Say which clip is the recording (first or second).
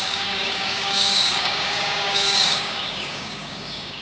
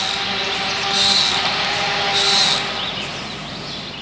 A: second